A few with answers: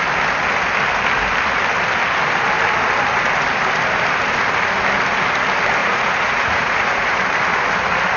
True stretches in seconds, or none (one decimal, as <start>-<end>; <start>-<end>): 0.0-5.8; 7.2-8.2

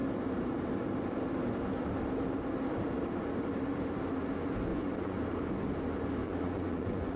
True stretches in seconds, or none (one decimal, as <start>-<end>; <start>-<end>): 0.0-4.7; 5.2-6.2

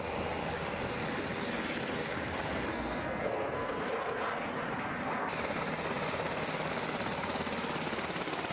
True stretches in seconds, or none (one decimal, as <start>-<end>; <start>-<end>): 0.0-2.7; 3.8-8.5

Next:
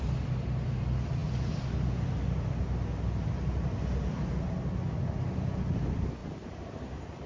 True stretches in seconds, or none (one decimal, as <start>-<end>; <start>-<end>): 0.0-6.2; 6.8-7.3

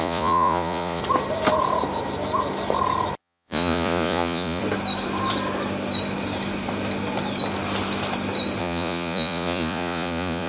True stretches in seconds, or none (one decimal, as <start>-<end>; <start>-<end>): 1.0-3.2; 4.6-8.6

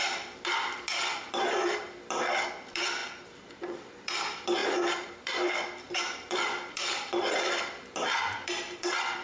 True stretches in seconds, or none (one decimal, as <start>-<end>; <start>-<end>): 4.6-5.1